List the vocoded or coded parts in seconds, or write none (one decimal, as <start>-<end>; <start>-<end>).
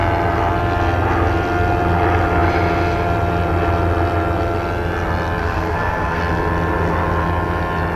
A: 5.4-6.2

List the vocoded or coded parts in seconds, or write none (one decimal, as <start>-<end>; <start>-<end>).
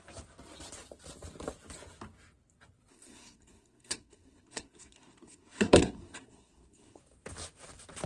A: 2.9-7.0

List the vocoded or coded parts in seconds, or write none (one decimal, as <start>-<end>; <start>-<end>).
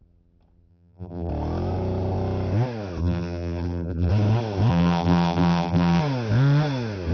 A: 0.7-1.3; 3.0-4.1; 4.7-6.0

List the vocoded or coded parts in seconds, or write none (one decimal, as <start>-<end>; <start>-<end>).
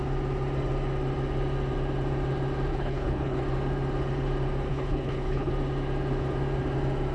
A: 2.7-3.4; 4.7-5.5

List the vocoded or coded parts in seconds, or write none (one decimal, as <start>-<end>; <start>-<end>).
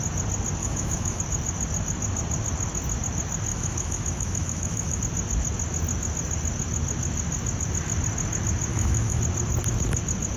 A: 0.6-1.2; 3.5-5.0; 8.7-9.2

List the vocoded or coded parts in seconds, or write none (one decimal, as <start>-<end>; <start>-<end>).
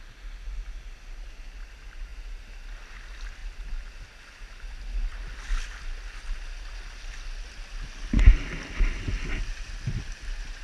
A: none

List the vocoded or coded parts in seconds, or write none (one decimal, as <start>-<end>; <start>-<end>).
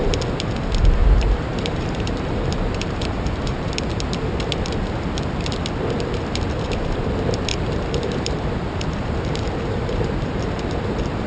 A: 1.0-3.7; 7.5-10.4